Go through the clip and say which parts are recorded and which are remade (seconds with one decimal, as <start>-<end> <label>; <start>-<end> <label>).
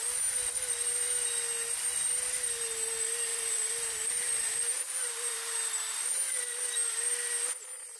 0.0-3.3 recorded; 3.3-6.4 remade; 6.4-8.0 recorded